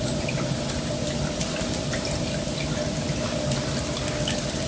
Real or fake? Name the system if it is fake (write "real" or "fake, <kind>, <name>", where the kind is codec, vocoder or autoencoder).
real